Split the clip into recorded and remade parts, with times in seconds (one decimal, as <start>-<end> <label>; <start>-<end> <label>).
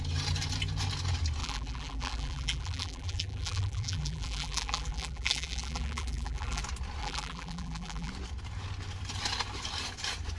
0.0-1.4 recorded; 1.4-6.6 remade; 6.6-7.0 recorded; 7.0-8.1 remade; 8.1-10.4 recorded